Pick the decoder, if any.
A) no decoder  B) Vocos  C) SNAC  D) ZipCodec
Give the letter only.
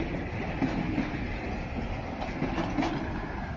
A